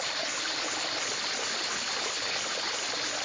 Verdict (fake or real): real